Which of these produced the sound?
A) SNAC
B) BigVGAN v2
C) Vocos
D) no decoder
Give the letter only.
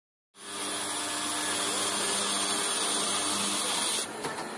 D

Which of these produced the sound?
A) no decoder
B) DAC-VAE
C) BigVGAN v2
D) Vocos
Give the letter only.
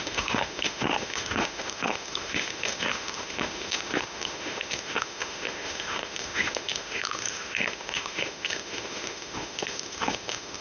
B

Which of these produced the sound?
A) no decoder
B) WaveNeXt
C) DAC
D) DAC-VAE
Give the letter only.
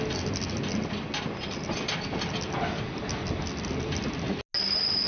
A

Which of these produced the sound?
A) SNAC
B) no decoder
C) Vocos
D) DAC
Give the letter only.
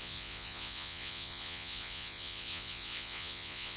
C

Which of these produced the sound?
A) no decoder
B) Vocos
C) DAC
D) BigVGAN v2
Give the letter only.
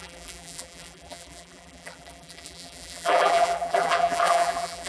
D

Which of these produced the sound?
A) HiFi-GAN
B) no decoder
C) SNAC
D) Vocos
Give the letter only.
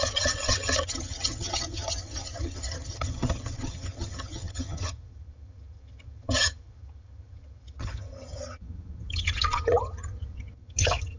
A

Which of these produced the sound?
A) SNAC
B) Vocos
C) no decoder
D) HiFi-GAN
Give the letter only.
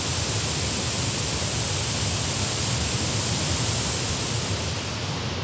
C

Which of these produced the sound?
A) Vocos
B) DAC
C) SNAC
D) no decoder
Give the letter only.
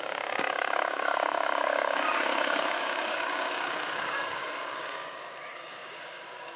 B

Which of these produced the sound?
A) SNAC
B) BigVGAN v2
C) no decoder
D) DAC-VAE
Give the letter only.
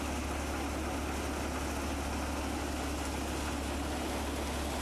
C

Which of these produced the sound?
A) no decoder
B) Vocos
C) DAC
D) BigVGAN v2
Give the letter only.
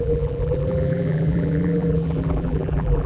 D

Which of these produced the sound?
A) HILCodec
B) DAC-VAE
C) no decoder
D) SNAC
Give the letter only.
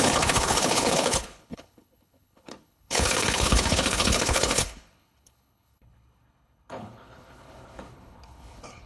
A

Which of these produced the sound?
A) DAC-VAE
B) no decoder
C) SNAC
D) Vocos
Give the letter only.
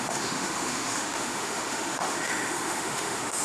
A